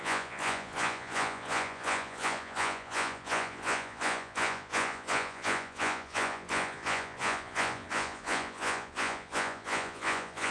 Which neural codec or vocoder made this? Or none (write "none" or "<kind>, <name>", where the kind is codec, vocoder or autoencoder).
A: vocoder, Vocos